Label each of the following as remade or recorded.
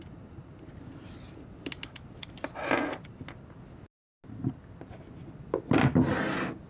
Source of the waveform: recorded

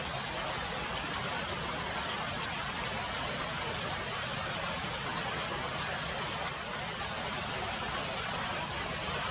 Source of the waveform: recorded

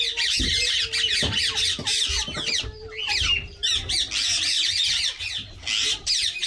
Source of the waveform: recorded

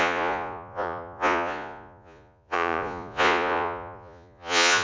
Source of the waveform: remade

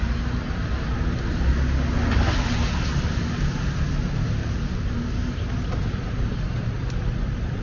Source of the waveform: recorded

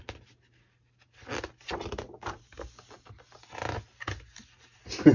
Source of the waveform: recorded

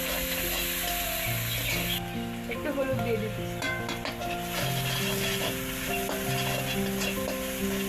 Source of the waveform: recorded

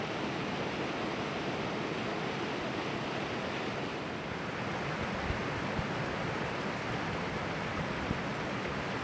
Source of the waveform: recorded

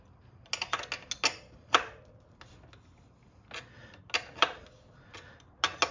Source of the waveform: recorded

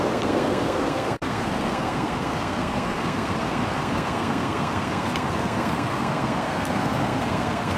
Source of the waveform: remade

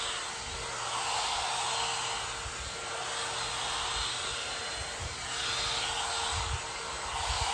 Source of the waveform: recorded